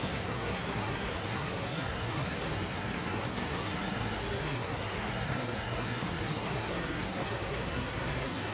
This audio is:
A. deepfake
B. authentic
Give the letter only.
A